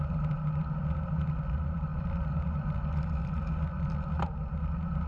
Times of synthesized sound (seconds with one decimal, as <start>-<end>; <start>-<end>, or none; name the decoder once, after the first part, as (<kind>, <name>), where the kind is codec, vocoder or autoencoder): none